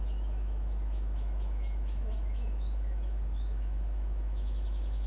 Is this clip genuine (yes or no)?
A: no